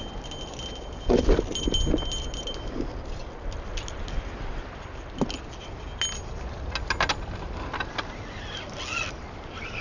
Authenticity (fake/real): real